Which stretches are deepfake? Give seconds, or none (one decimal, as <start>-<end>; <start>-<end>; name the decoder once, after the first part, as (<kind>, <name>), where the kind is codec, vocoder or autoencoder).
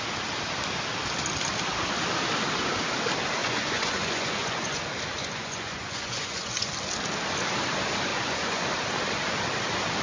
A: 3.4-4.8 (vocoder, Vocos); 5.2-6.7; 8.1-8.6